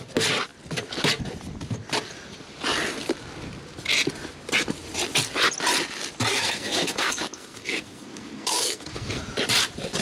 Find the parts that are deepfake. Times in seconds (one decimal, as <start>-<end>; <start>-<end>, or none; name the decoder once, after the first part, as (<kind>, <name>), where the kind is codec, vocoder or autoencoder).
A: 6.3-9.2 (codec, SNAC)

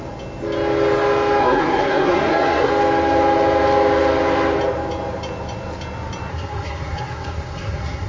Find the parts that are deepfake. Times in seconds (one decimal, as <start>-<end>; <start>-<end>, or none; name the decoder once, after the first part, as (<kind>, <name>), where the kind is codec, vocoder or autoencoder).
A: 1.4-2.7 (codec, SNAC); 6.3-8.1

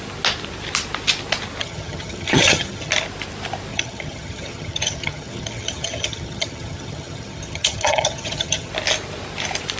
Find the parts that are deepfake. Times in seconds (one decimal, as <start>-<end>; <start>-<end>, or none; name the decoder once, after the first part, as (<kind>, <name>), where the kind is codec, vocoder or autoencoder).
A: 1.6-2.9 (vocoder, HiFi-GAN); 3.7-8.7

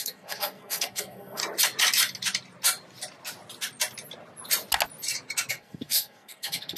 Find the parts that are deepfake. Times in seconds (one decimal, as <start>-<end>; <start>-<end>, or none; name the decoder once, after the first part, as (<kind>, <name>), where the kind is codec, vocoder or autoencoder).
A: 0.0-1.4 (codec, SNAC); 5.5-6.8

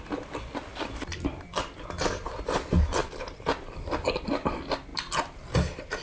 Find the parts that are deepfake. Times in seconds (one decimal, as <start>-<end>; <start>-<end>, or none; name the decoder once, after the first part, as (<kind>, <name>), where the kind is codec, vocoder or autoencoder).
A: 0.7-2.0 (vocoder, BigVGAN v2); 3.0-4.5

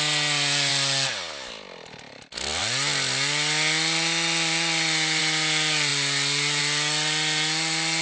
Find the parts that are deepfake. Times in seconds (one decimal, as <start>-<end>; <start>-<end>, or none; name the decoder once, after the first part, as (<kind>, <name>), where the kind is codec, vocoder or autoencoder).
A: none

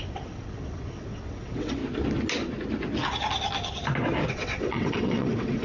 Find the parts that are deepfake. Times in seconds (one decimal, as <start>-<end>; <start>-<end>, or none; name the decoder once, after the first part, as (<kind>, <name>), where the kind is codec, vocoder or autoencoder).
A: 0.0-1.8 (vocoder, WaveNeXt); 4.3-5.6